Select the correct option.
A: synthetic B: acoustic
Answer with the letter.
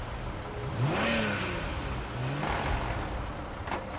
B